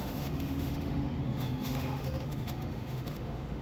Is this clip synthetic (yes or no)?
yes